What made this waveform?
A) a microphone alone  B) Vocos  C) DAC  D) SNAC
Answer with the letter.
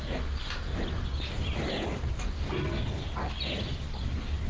A